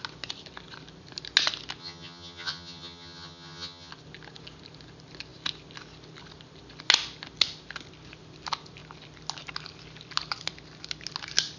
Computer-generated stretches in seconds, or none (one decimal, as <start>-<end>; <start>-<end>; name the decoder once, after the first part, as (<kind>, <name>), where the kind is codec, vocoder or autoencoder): 1.8-3.9 (vocoder, HiFi-GAN)